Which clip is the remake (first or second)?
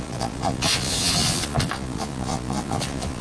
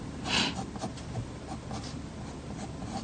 first